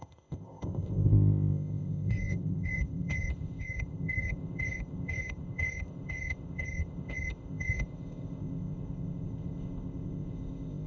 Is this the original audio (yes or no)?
no